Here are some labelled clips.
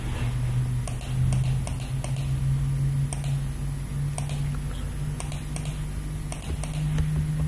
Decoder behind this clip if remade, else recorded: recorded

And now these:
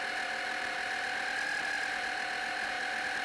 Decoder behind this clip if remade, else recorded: recorded